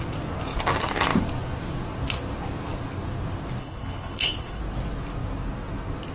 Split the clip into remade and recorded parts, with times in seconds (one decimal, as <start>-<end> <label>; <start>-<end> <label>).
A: 0.0-3.6 recorded; 3.6-4.6 remade; 4.6-6.1 recorded